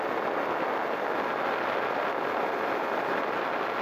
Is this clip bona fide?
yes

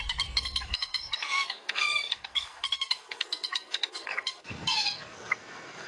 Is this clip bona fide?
no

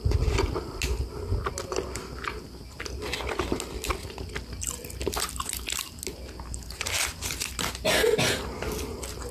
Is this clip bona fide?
yes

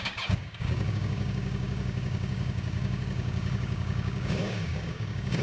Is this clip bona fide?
no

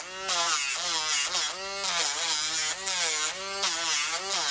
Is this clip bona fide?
yes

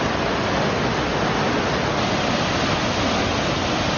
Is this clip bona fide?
yes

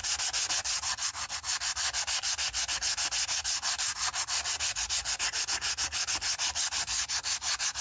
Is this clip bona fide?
yes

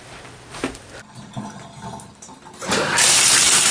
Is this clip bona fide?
yes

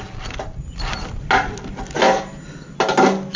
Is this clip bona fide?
yes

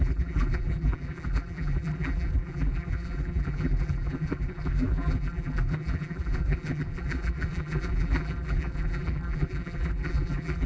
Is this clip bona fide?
no